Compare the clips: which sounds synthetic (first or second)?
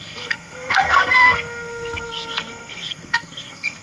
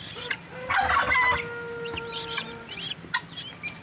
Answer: first